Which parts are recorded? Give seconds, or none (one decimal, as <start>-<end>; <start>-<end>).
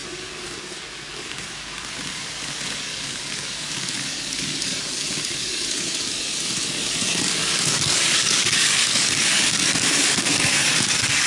none